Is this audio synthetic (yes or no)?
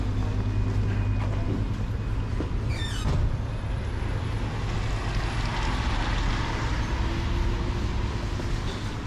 no